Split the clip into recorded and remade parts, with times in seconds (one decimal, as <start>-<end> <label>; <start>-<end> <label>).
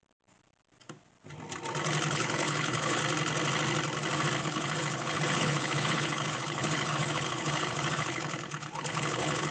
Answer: 0.0-2.1 recorded; 2.1-3.0 remade; 3.0-4.4 recorded; 4.4-9.5 remade